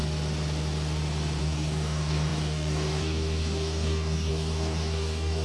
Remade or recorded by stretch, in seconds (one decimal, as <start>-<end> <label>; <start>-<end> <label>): 0.0-1.4 recorded; 1.4-5.4 remade